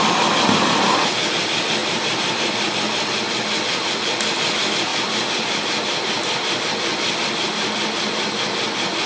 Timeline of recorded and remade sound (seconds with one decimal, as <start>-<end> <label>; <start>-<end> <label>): 0.0-1.8 recorded; 1.8-2.8 remade; 2.8-4.9 recorded; 4.9-6.6 remade; 6.6-9.1 recorded